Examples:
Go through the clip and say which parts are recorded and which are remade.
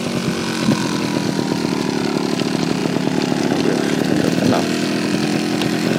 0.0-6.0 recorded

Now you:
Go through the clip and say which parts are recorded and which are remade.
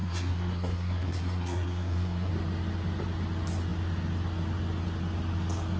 0.0-2.3 remade; 2.3-5.8 recorded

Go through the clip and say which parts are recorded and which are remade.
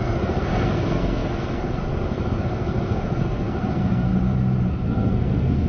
0.0-4.1 remade; 4.1-4.7 recorded; 4.7-5.7 remade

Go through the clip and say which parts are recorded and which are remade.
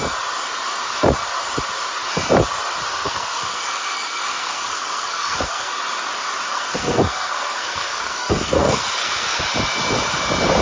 0.0-2.9 recorded; 2.9-5.7 remade; 5.7-6.5 recorded; 6.5-9.4 remade; 9.4-10.6 recorded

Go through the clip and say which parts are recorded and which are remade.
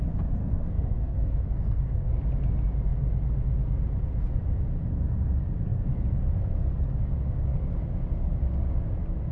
0.0-0.4 recorded; 0.4-2.1 remade; 2.1-9.3 recorded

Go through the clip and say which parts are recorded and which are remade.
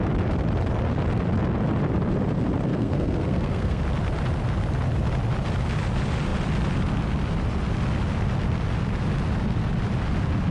0.0-2.7 recorded; 2.7-3.8 remade; 3.8-10.5 recorded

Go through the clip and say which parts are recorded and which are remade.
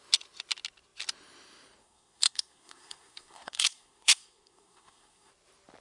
0.0-1.8 recorded; 1.8-5.3 remade; 5.3-5.8 recorded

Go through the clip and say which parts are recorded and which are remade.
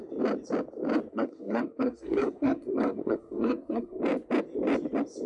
0.0-1.1 recorded; 1.1-4.0 remade; 4.0-5.3 recorded